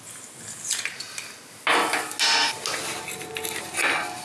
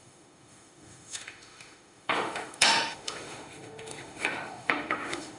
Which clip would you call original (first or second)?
first